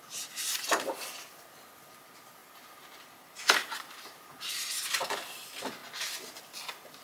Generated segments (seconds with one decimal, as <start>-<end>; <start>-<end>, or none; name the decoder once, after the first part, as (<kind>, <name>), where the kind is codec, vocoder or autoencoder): 2.4-5.1 (vocoder, BigVGAN v2); 5.8-6.4